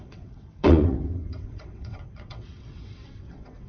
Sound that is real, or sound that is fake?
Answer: fake